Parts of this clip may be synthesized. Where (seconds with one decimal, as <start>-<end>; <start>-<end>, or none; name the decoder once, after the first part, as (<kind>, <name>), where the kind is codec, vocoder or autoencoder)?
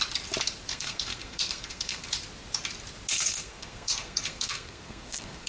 0.7-2.0 (codec, SNAC); 3.1-5.5